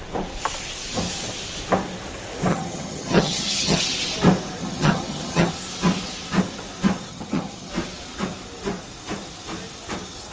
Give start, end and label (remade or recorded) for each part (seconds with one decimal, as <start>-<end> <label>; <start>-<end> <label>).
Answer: 0.0-2.5 recorded; 2.5-3.8 remade; 3.8-4.6 recorded; 4.6-5.5 remade; 5.5-7.1 recorded; 7.1-7.7 remade; 7.7-10.3 recorded